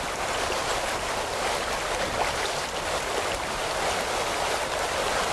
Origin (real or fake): real